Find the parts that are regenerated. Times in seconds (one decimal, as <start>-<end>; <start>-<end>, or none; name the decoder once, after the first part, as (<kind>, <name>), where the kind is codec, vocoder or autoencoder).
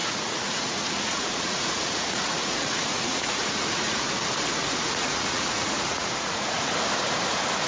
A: 0.0-4.1 (vocoder, Vocos); 4.6-6.7